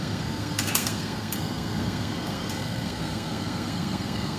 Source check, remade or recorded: remade